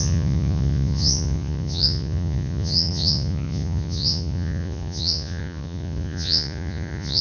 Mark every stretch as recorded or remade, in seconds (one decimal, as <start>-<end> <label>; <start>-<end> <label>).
0.0-7.2 remade